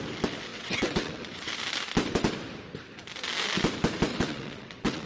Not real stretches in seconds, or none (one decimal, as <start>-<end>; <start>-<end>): 0.5-1.5; 4.1-5.1